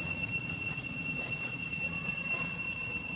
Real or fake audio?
fake